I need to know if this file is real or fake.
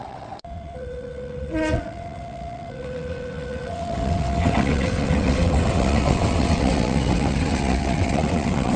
fake